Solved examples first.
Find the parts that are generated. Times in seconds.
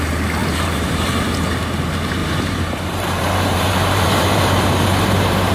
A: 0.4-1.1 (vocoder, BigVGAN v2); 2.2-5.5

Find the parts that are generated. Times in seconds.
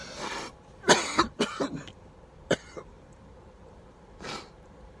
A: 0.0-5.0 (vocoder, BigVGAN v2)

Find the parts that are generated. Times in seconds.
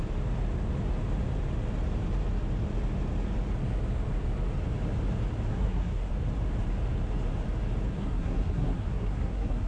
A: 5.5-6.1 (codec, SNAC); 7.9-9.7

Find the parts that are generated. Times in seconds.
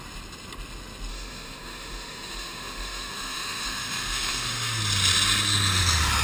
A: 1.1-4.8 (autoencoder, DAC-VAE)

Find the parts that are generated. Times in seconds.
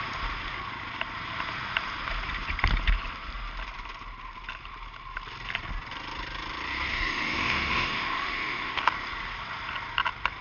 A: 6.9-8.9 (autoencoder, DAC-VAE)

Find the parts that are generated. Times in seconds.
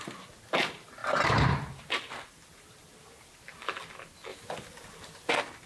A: 1.0-1.6 (vocoder, BigVGAN v2)